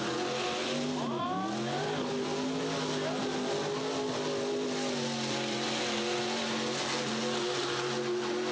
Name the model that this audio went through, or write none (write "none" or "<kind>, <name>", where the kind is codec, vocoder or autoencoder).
none